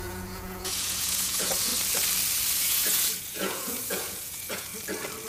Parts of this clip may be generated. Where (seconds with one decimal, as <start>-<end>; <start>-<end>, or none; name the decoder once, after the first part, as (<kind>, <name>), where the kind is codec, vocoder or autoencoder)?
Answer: 0.0-1.7 (vocoder, Vocos); 2.6-4.7

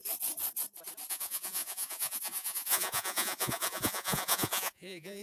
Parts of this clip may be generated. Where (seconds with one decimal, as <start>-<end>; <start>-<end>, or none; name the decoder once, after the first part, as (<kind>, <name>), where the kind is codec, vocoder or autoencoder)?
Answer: 1.1-5.2 (vocoder, Vocos)